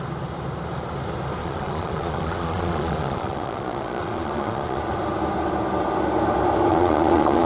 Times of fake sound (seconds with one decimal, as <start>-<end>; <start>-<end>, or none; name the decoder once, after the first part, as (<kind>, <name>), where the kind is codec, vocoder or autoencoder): 1.4-4.8 (vocoder, Vocos); 6.7-7.5